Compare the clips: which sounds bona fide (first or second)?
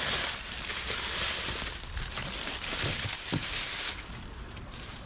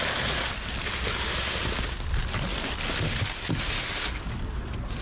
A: second